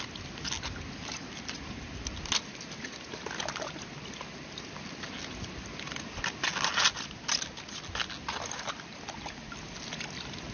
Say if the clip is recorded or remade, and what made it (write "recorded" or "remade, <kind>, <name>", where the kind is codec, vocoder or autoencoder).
recorded